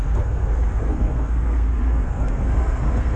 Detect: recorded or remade remade